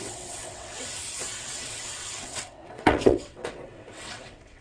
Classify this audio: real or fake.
fake